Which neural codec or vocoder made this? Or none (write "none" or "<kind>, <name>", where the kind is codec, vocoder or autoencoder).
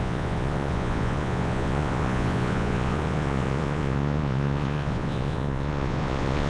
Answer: vocoder, Vocos